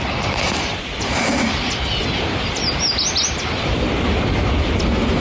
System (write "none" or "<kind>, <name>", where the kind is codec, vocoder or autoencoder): none